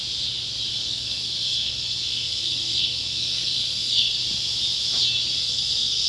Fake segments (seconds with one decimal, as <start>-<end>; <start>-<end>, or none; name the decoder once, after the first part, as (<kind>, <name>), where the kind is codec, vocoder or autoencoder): 0.7-4.2 (codec, SNAC); 5.4-6.1